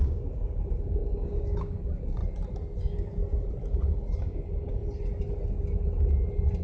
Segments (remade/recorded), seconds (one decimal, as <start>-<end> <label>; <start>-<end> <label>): 0.0-2.2 remade; 2.2-2.8 recorded; 2.8-3.2 remade; 3.2-4.2 recorded; 4.2-4.8 remade; 4.8-6.6 recorded